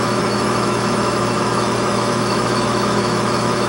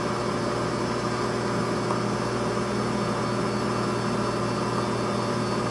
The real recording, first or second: second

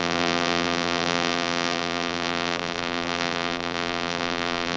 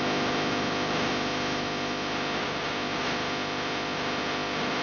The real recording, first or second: second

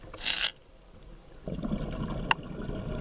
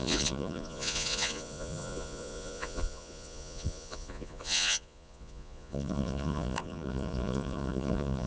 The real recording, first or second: first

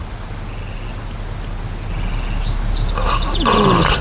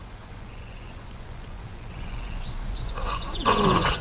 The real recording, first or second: first